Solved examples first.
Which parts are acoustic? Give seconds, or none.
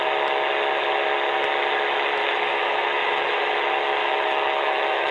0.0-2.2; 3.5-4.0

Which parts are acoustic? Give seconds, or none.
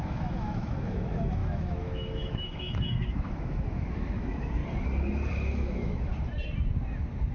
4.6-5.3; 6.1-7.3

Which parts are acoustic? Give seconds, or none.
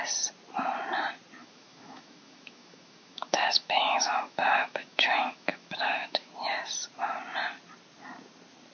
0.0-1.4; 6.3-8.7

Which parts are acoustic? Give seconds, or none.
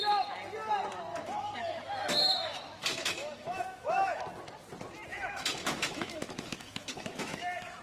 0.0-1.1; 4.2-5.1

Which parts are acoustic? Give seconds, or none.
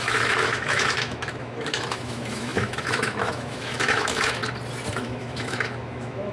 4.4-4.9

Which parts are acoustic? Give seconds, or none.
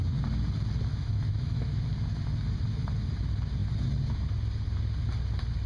0.0-0.9; 1.8-5.7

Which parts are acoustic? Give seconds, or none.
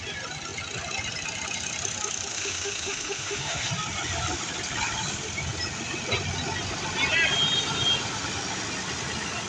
0.0-2.3; 3.7-9.5